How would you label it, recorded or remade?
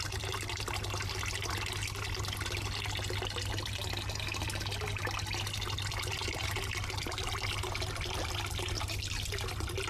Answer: recorded